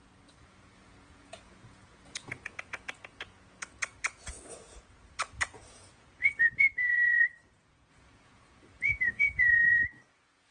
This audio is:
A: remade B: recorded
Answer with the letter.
A